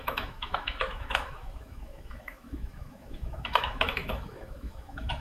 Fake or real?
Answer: fake